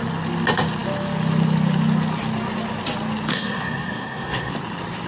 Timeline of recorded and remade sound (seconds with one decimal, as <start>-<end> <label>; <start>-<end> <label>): 0.0-3.3 recorded; 3.3-4.5 remade; 4.5-5.1 recorded